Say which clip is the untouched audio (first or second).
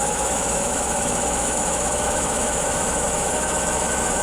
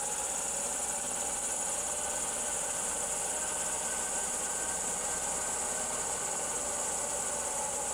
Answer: second